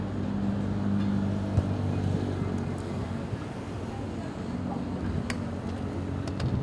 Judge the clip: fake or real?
real